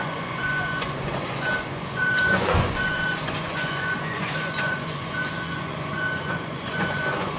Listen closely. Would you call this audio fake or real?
fake